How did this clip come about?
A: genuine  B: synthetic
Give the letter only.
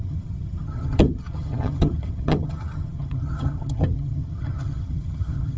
B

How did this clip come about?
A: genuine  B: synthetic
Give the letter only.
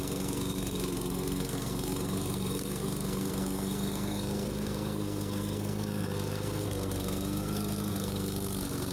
B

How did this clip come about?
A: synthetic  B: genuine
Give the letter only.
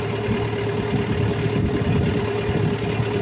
B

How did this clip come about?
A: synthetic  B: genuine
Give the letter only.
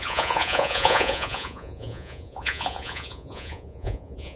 A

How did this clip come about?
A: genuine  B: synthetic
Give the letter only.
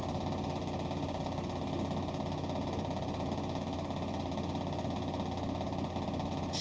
A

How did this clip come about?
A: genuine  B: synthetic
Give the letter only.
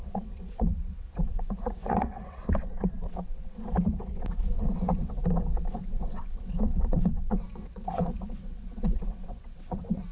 B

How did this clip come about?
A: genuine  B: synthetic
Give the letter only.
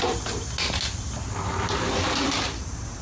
A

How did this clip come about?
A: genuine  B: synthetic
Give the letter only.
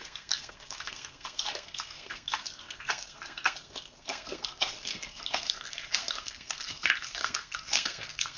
B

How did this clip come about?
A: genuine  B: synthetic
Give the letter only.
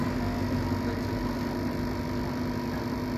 A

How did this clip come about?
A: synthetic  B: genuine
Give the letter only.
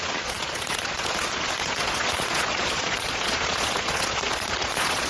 A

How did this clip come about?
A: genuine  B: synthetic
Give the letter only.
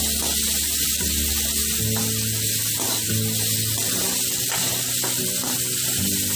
A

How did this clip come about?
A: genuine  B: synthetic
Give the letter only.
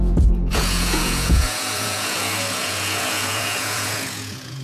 B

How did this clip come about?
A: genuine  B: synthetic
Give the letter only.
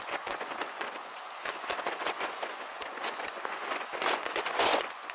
B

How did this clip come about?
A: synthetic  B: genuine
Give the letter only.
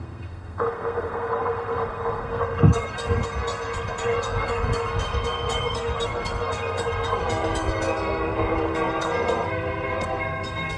A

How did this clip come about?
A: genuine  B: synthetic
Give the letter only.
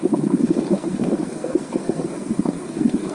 B